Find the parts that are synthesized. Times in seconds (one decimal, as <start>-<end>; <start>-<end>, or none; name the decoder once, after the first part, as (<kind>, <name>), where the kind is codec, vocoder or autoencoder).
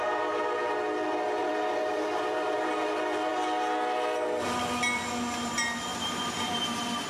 1.4-2.7 (vocoder, BigVGAN v2); 5.9-6.6